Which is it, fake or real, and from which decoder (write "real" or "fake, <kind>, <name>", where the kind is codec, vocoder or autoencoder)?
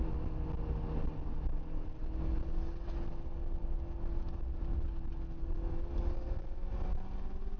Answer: real